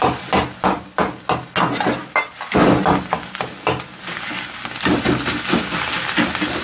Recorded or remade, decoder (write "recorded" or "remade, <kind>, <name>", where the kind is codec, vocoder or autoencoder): recorded